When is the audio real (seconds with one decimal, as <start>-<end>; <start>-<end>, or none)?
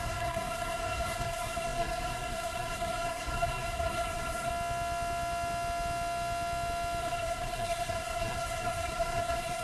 4.5-7.0